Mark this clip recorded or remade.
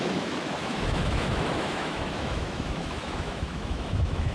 remade